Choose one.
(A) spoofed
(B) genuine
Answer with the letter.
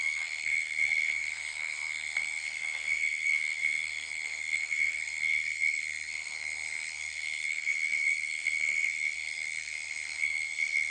A